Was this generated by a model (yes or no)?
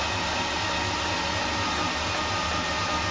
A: no